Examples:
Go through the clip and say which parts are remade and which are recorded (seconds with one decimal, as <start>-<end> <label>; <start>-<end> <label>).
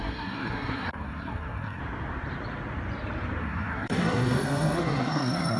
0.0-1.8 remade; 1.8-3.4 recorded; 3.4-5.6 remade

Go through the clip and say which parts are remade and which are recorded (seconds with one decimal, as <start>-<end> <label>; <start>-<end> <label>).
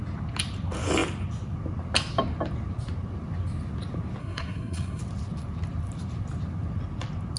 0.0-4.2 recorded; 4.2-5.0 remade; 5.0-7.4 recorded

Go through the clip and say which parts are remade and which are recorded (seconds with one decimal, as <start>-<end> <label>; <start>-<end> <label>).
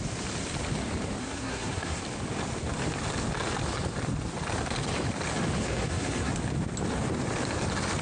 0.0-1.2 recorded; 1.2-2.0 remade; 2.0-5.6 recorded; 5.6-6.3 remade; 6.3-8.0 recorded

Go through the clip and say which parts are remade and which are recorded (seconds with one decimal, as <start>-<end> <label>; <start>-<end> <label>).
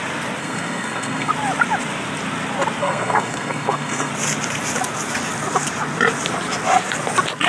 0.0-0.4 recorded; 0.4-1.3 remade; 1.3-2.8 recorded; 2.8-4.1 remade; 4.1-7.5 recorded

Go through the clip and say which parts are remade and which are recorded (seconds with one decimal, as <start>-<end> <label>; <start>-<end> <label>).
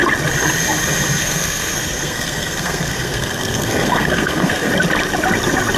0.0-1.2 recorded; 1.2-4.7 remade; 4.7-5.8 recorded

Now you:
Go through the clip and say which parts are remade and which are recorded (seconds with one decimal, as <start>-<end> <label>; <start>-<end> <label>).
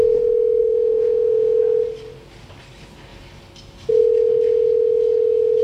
0.0-0.6 recorded; 0.6-1.6 remade; 1.6-5.6 recorded